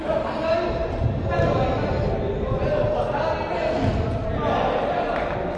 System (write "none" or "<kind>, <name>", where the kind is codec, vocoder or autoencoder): none